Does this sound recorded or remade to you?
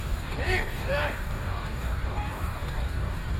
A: remade